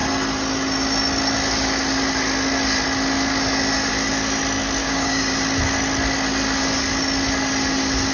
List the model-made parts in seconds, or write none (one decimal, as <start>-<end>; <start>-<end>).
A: 4.8-5.3